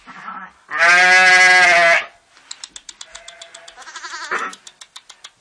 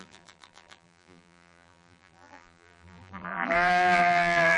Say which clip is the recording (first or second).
first